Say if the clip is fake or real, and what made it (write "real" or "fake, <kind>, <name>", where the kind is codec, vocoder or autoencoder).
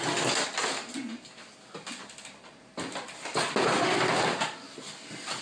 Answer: real